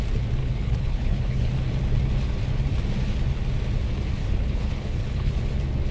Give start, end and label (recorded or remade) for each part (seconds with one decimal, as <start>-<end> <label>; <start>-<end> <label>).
0.0-0.4 recorded; 0.4-1.5 remade; 1.5-4.2 recorded; 4.2-5.4 remade; 5.4-5.9 recorded

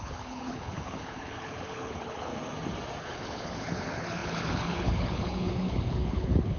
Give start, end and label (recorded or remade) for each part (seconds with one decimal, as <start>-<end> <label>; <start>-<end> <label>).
0.0-2.3 remade; 2.3-3.0 recorded; 3.0-6.6 remade

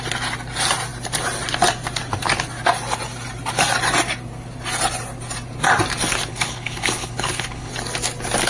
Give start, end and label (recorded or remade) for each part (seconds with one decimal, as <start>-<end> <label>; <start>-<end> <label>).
0.0-6.3 recorded; 6.3-7.7 remade; 7.7-8.5 recorded